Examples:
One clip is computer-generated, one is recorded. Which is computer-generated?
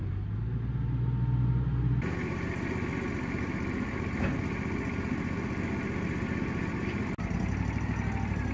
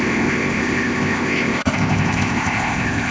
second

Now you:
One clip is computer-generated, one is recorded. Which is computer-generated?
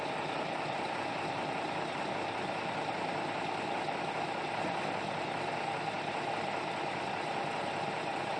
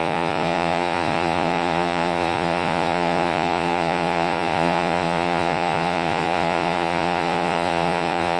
second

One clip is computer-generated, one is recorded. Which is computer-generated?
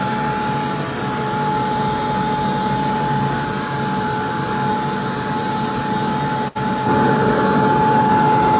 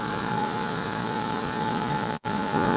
second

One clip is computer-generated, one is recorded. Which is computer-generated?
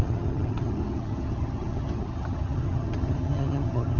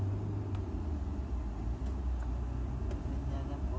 first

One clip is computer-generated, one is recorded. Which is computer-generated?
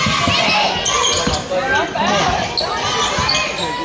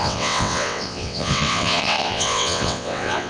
second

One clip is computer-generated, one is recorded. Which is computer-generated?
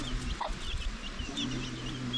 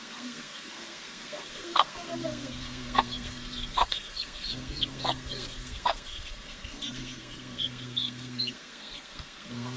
second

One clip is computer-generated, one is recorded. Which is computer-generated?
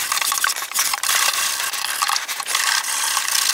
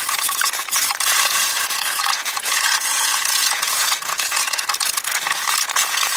second